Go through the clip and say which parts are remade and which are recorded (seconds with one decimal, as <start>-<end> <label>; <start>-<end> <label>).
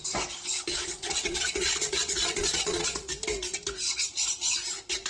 0.0-0.7 recorded; 0.7-3.1 remade; 3.1-5.1 recorded